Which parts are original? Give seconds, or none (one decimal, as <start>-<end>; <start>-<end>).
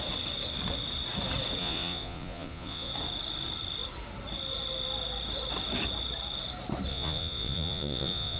0.0-1.6; 2.9-6.9